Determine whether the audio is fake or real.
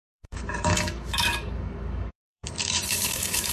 fake